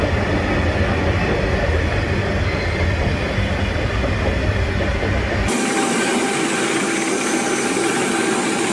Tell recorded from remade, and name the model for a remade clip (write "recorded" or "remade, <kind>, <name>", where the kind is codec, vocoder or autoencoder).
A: recorded